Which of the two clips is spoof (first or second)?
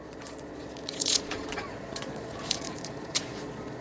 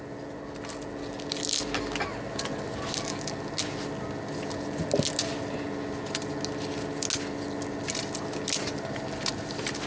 first